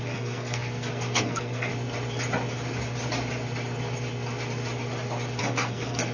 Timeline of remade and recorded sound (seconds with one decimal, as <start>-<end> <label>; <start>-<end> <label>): 0.0-1.7 remade; 1.7-5.4 recorded; 5.4-6.1 remade